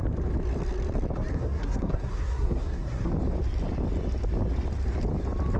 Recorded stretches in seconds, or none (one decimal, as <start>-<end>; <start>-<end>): 0.0-1.3; 3.1-5.6